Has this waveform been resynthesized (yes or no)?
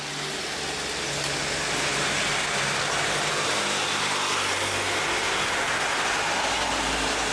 no